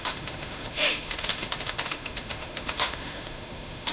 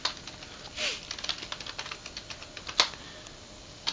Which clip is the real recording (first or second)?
second